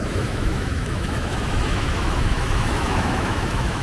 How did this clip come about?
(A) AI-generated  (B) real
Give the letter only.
A